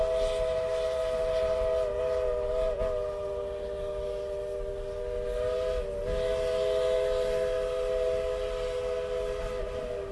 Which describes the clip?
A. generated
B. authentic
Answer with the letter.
B